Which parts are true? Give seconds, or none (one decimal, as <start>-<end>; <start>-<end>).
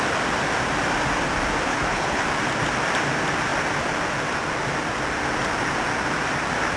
0.0-1.7; 2.2-6.8